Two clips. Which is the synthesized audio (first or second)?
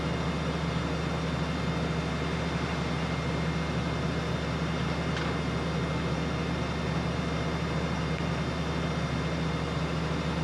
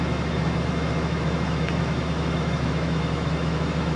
second